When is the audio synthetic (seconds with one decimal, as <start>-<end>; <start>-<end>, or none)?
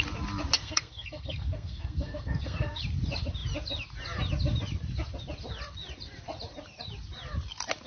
0.6-2.8